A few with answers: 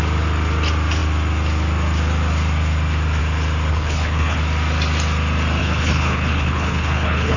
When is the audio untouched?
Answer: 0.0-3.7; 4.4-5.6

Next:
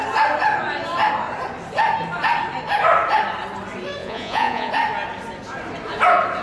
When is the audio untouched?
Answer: 0.0-4.0; 4.7-6.4